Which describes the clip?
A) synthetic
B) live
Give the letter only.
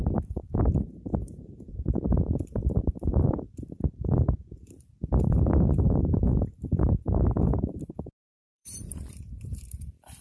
A